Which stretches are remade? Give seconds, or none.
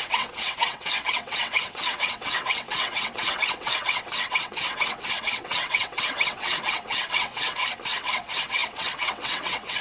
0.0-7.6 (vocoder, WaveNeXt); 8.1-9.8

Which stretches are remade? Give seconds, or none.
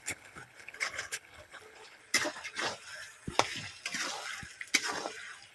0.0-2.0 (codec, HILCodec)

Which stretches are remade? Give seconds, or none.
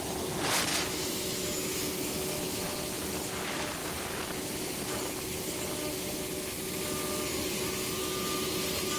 0.7-2.7 (autoencoder, DAC-VAE)